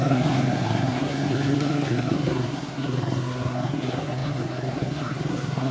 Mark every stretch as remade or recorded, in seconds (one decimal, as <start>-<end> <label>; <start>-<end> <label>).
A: 0.0-5.7 remade